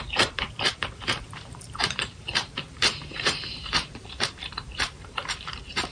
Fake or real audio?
fake